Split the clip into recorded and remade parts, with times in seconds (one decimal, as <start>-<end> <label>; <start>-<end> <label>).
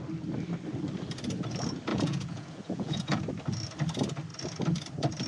0.0-1.9 recorded; 1.9-3.2 remade; 3.2-5.3 recorded